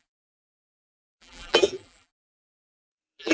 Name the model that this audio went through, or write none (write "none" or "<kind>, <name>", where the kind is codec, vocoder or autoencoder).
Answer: vocoder, BigVGAN v2